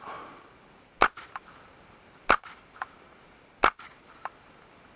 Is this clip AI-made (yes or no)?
no